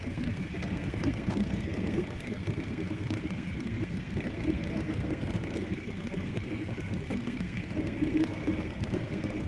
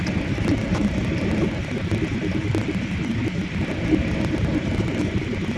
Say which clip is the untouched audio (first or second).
second